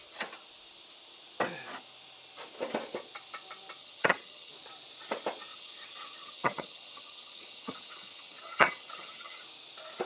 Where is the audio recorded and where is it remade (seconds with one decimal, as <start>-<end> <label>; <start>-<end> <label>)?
0.0-3.8 recorded; 3.8-4.5 remade; 4.5-5.5 recorded; 5.5-9.4 remade; 9.4-10.1 recorded